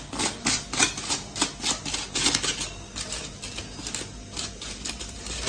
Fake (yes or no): no